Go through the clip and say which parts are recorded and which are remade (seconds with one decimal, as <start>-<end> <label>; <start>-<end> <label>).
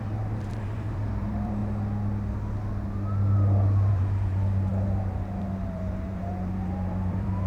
0.0-1.6 remade; 1.6-3.9 recorded; 3.9-7.5 remade